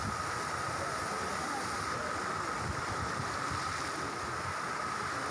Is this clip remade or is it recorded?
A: recorded